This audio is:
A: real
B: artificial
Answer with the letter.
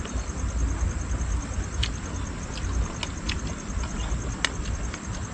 A